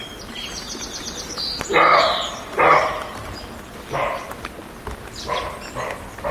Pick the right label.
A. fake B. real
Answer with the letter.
B